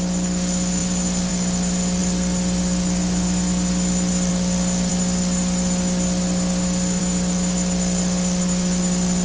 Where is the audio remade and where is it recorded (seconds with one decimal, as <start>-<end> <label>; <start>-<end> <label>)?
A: 0.0-9.2 recorded